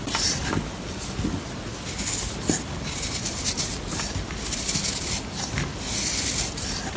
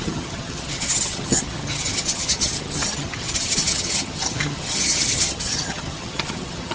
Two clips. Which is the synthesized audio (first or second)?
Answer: second